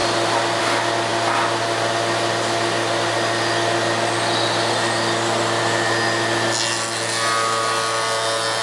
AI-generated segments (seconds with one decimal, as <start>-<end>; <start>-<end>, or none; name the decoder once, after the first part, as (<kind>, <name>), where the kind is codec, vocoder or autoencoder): none